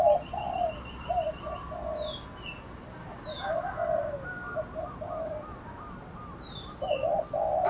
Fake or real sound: real